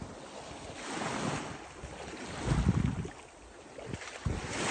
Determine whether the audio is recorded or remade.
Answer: recorded